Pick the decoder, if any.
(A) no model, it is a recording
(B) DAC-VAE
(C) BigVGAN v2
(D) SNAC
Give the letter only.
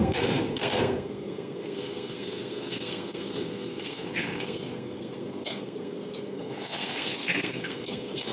D